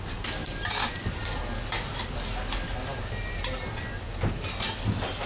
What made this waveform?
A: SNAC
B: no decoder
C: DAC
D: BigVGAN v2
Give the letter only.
B